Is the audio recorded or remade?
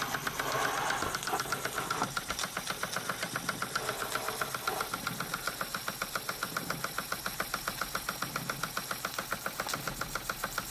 recorded